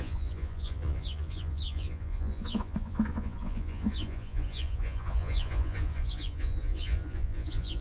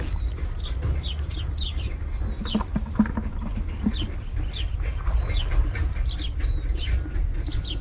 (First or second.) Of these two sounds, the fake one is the first